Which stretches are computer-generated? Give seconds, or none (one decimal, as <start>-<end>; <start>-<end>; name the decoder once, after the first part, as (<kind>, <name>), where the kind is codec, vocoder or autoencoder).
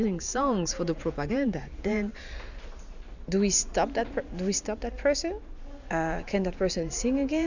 0.0-2.1 (vocoder, Vocos); 6.2-7.5